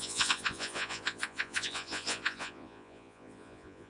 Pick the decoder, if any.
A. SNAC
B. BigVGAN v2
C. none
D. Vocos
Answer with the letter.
D